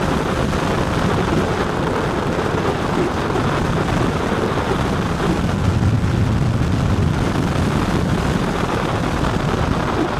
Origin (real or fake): real